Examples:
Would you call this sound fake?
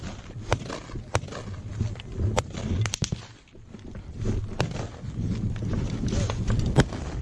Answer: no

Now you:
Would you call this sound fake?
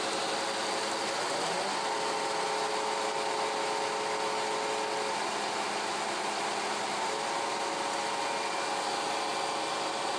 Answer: no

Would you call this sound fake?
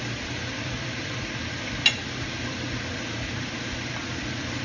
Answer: yes